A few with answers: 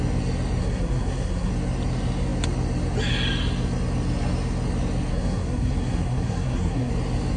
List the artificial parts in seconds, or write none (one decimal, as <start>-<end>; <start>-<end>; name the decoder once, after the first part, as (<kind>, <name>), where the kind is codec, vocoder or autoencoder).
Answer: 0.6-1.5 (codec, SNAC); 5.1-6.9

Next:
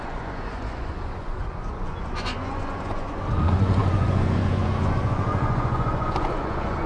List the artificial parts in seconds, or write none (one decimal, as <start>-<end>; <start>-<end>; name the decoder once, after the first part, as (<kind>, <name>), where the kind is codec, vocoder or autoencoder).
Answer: 0.0-6.9 (vocoder, Vocos)

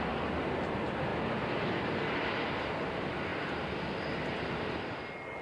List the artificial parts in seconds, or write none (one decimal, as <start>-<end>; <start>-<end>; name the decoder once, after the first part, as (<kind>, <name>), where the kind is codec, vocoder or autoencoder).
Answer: none

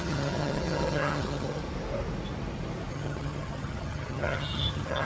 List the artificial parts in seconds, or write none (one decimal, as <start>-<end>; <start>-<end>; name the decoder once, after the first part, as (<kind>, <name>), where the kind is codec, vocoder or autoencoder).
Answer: 0.0-1.6 (vocoder, HiFi-GAN); 2.9-5.1